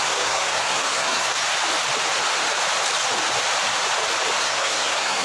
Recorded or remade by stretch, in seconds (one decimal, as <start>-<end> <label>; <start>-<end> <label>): 0.0-1.3 remade; 1.3-4.4 recorded; 4.4-5.2 remade